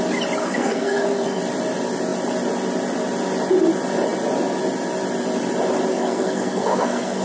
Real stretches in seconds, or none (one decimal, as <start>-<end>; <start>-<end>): 0.0-0.4; 1.4-5.9